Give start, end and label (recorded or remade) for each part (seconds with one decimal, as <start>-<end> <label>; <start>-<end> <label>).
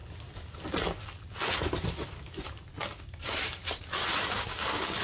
0.0-3.0 recorded; 3.0-3.6 remade; 3.6-4.2 recorded; 4.2-5.0 remade